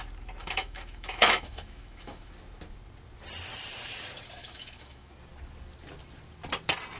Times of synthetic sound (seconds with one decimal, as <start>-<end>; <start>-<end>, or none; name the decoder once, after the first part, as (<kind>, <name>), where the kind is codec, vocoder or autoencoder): 0.4-2.3 (autoencoder, DAC-VAE); 4.4-5.1

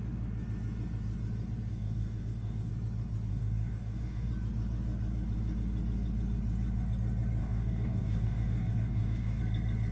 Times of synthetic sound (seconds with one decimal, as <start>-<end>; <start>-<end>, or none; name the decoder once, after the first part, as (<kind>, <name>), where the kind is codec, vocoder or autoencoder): 1.7-2.7 (codec, DAC); 3.3-4.3; 7.4-9.4

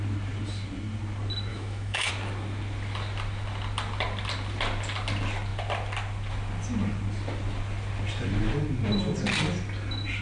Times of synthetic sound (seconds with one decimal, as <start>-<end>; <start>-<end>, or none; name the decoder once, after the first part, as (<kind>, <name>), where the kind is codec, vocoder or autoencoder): 1.5-2.1 (autoencoder, DAC-VAE)

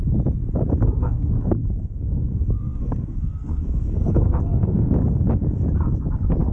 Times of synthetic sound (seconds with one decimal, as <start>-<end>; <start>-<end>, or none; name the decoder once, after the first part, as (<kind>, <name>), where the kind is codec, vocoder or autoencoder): 1.0-4.9 (codec, SNAC)

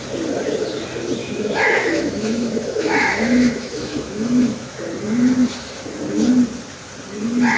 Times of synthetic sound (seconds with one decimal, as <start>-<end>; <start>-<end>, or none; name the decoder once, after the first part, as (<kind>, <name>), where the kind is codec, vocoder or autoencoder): 1.2-4.8 (autoencoder, DAC-VAE)

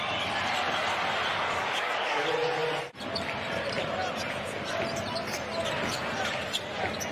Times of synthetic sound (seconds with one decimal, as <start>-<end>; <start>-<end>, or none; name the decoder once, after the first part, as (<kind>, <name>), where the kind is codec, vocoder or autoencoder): 1.3-2.2 (codec, DAC)

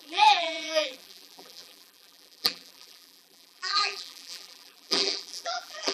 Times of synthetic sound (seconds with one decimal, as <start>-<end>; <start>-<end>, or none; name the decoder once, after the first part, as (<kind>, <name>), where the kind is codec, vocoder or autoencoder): 0.0-5.9 (vocoder, BigVGAN v2)

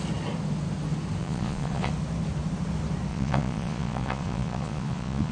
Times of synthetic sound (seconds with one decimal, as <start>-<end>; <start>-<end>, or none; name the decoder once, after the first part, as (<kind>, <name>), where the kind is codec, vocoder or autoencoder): 1.2-1.9 (vocoder, Vocos); 3.1-5.3